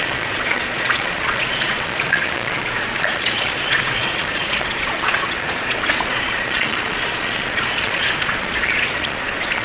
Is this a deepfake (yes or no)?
yes